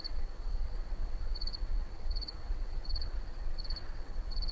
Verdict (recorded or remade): remade